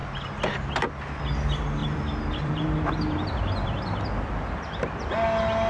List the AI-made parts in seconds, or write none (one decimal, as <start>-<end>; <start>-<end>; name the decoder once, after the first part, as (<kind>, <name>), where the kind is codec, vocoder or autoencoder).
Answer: 1.8-4.0 (vocoder, BigVGAN v2)